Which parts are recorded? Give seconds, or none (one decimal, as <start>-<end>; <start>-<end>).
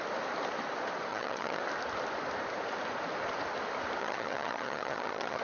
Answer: 0.0-1.1; 1.6-4.0